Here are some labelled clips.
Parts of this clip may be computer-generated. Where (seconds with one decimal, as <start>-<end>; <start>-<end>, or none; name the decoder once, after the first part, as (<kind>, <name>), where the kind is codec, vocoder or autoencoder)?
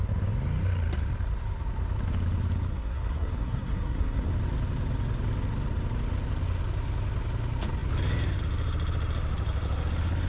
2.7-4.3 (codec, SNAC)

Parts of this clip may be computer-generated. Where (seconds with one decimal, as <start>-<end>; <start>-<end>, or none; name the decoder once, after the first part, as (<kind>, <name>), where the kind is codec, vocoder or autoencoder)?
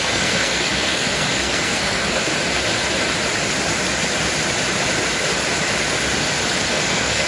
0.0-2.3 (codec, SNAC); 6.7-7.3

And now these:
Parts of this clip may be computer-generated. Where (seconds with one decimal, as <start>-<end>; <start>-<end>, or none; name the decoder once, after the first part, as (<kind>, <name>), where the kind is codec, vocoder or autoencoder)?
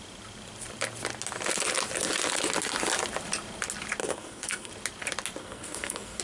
4.0-4.7 (codec, SNAC); 5.4-6.2